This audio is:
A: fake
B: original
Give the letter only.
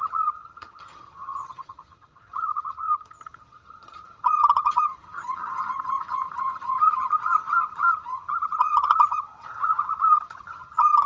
A